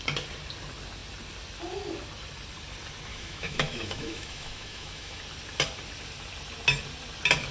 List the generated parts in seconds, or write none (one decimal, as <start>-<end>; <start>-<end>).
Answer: 3.1-5.2